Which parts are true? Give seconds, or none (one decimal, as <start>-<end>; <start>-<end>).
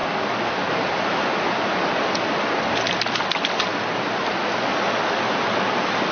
0.0-6.1